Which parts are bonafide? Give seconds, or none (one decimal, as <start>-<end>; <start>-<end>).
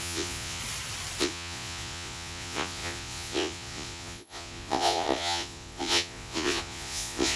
0.6-1.2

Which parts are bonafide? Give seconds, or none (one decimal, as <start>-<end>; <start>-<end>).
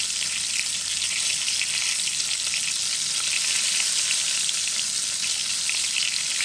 0.0-6.4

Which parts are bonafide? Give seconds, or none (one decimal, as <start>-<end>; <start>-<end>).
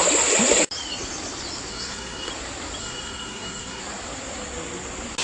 0.0-1.7; 2.3-2.8; 3.8-5.2